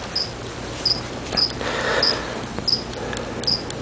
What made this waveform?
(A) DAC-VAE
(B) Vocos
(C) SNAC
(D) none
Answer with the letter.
D